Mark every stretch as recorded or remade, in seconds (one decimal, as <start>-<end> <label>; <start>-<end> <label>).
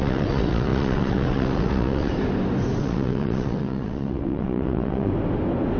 0.0-2.1 remade; 2.1-2.8 recorded; 2.8-5.1 remade; 5.1-5.8 recorded